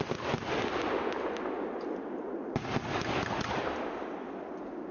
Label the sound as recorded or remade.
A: recorded